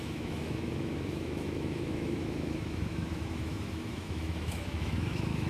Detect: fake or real fake